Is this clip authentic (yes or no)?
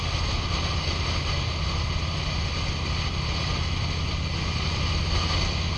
yes